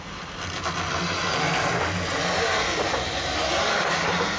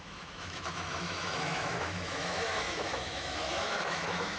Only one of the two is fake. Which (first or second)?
second